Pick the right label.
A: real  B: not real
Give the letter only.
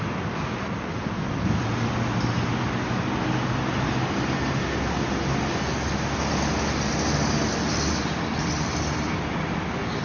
A